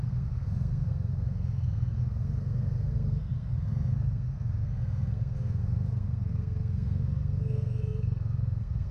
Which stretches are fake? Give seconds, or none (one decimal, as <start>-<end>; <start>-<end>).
0.0-8.9